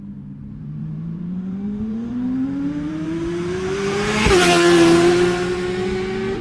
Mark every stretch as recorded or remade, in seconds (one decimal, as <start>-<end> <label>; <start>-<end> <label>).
0.0-0.8 recorded; 0.8-4.3 remade; 4.3-6.4 recorded